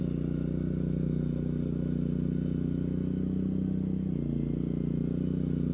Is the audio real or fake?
real